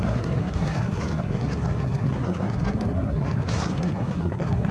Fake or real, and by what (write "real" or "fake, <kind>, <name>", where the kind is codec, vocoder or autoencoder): fake, codec, SNAC